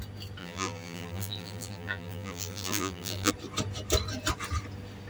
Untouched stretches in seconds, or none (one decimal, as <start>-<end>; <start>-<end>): 0.0-0.4; 3.3-5.1